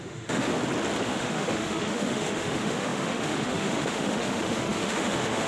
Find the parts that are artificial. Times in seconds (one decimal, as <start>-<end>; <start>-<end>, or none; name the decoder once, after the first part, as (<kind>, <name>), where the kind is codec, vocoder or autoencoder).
0.0-0.5 (autoencoder, DAC-VAE); 1.0-5.5